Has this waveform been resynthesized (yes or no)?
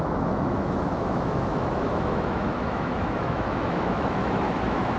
yes